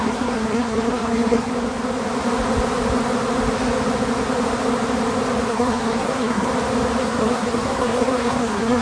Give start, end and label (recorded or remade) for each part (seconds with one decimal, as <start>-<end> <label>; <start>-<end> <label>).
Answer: 0.0-1.5 remade; 1.5-5.5 recorded; 5.5-6.5 remade; 6.5-7.0 recorded; 7.0-8.8 remade